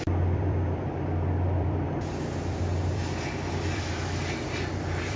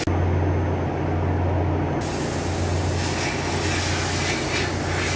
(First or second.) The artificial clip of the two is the first